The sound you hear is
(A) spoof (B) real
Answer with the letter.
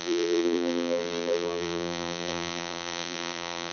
A